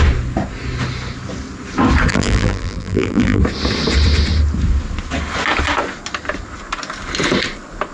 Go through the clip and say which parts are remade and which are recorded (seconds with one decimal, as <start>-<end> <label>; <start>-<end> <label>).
0.0-2.1 recorded; 2.1-3.4 remade; 3.4-7.9 recorded